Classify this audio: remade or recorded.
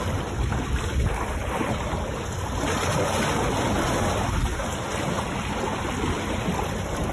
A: recorded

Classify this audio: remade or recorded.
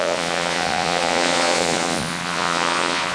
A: remade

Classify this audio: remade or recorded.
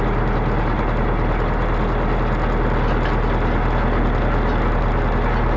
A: recorded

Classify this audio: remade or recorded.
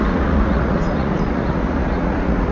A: remade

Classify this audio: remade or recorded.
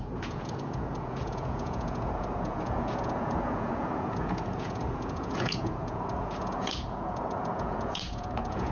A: remade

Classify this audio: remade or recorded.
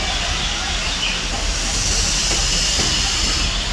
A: recorded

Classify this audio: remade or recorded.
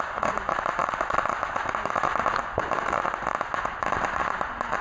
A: remade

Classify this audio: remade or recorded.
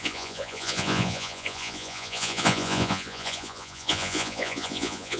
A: remade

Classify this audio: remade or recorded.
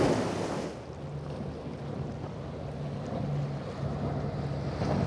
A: recorded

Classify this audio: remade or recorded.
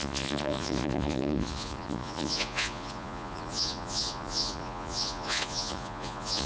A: remade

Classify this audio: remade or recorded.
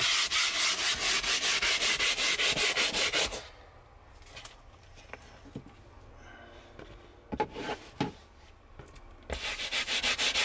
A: recorded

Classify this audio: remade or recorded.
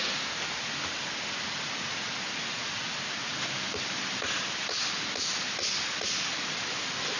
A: recorded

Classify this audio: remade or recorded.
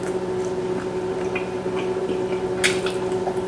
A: recorded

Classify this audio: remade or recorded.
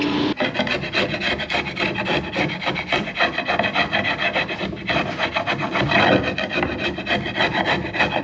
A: recorded